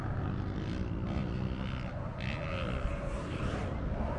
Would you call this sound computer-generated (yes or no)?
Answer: no